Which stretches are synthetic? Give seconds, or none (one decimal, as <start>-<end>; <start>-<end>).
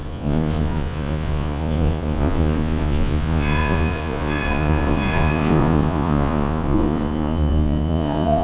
0.0-8.4